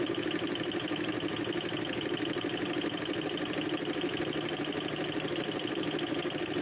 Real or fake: real